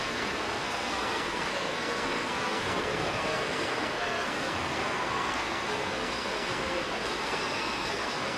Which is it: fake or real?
fake